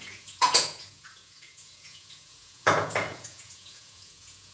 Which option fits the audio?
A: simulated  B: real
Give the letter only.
A